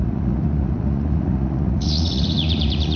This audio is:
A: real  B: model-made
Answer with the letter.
B